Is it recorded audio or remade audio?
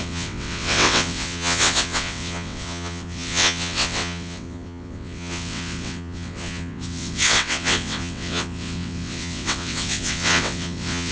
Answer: remade